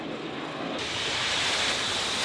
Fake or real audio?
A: real